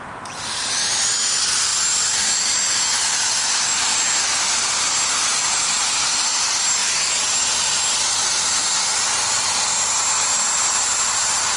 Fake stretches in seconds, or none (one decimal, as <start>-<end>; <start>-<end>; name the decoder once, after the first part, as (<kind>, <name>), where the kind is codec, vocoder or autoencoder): 6.8-7.8 (vocoder, BigVGAN v2)